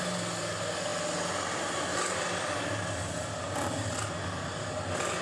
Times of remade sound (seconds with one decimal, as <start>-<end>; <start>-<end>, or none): none